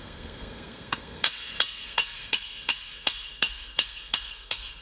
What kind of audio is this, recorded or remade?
remade